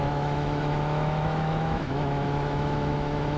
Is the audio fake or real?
fake